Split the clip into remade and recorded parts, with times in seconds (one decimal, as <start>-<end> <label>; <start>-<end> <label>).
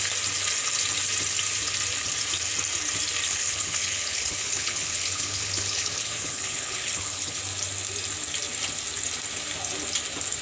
0.0-3.3 recorded; 3.3-7.4 remade; 7.4-10.4 recorded